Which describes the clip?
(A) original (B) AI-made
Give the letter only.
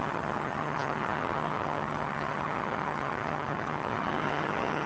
B